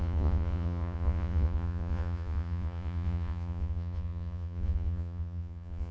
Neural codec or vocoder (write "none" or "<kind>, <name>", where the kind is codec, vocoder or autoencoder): vocoder, Vocos